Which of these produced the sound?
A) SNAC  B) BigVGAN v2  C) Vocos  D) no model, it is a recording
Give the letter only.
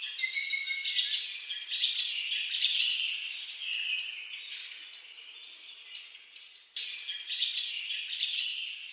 D